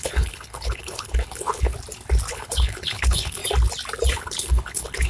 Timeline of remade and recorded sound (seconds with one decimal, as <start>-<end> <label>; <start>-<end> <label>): 0.0-1.7 remade; 1.7-2.3 recorded; 2.3-3.4 remade; 3.4-4.1 recorded; 4.1-5.1 remade